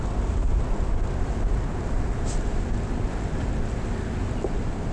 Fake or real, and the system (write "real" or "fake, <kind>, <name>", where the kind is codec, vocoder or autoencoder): real